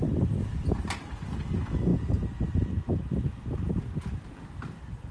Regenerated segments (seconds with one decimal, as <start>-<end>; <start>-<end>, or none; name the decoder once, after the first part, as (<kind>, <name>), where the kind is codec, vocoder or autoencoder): 1.9-5.1 (vocoder, BigVGAN v2)